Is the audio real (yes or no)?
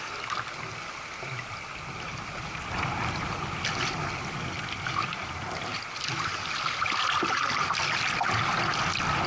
yes